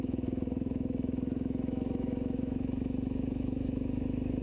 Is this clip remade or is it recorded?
remade